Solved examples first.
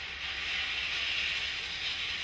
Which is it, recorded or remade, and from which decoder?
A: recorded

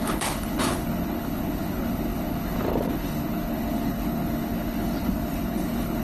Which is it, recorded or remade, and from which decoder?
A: remade, codec, HILCodec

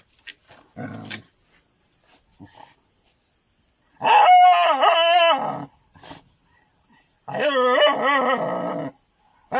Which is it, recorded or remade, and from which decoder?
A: recorded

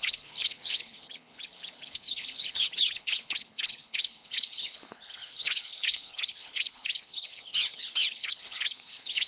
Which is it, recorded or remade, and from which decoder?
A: remade, codec, HILCodec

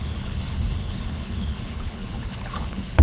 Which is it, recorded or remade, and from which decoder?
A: remade, codec, HILCodec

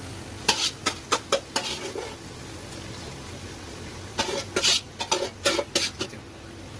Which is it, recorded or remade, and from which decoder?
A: recorded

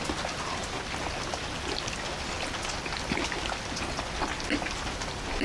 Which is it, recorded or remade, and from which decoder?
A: recorded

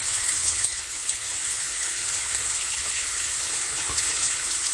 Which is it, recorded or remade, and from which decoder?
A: remade, codec, HILCodec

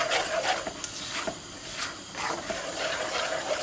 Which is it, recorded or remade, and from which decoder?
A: recorded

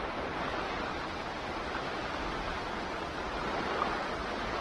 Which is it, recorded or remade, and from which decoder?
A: recorded